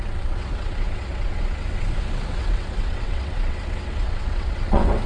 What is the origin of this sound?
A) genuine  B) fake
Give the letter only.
B